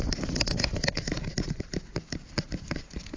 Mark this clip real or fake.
real